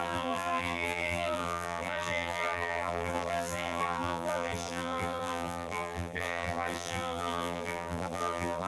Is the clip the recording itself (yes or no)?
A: no